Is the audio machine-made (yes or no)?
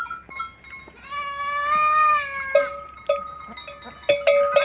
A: no